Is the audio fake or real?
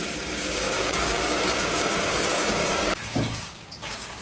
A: fake